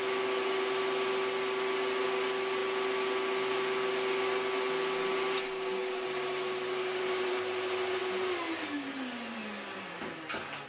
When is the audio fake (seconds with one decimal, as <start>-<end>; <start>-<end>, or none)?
none